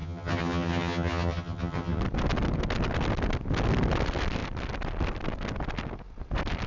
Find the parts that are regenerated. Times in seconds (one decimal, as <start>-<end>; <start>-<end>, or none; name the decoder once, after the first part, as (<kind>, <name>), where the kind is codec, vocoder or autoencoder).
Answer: 0.0-2.0 (vocoder, HiFi-GAN)